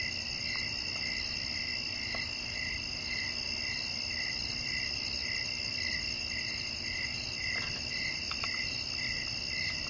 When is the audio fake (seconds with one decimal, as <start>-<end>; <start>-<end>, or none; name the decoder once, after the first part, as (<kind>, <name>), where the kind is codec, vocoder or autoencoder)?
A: none